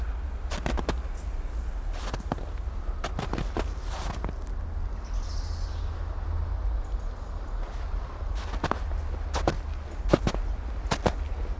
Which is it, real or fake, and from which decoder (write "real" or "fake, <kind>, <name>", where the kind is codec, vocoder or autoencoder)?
real